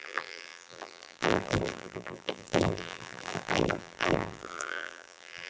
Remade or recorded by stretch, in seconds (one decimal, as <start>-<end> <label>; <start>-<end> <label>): 0.0-5.5 remade